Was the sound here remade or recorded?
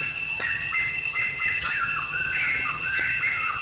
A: remade